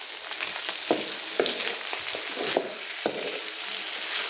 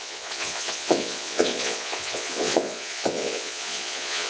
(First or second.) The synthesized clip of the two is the second